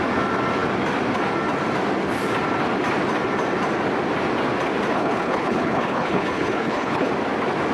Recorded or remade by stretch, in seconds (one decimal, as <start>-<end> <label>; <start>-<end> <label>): 0.0-4.9 recorded; 4.9-7.1 remade; 7.1-7.7 recorded

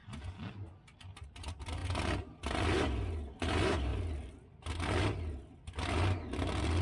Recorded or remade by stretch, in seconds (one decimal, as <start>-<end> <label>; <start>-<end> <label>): 0.0-6.8 recorded

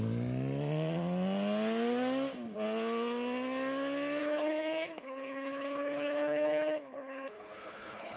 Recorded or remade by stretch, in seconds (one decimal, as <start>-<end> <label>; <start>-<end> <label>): 0.0-4.2 recorded; 4.2-8.2 remade

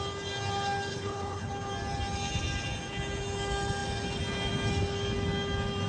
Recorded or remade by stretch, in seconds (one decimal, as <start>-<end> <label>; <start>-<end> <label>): 0.0-0.9 recorded; 0.9-1.5 remade; 1.5-5.9 recorded

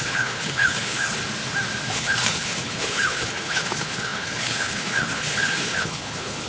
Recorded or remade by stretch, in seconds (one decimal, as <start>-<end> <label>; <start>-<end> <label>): 0.0-1.2 remade; 1.2-1.9 recorded; 1.9-6.5 remade

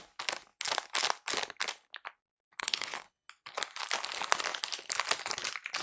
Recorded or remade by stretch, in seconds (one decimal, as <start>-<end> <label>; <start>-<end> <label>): 0.0-2.6 recorded; 2.6-3.3 remade; 3.3-5.8 recorded

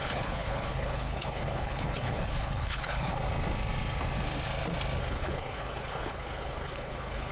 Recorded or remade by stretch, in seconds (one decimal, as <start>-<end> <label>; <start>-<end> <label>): 0.0-3.2 remade; 3.2-5.1 recorded; 5.1-7.3 remade

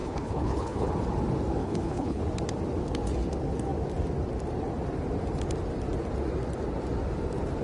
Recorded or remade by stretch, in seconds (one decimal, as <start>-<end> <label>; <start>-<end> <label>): 0.0-0.9 remade; 0.9-1.6 recorded; 1.6-2.2 remade; 2.2-7.6 recorded